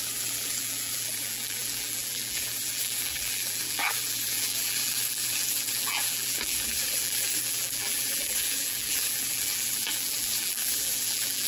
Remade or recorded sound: remade